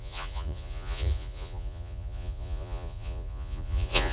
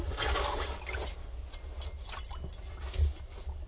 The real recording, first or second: second